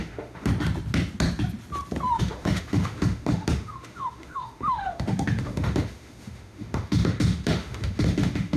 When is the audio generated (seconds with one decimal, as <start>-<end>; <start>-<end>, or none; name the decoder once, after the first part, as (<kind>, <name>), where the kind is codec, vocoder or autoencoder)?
0.0-0.5 (autoencoder, DAC-VAE); 2.2-8.6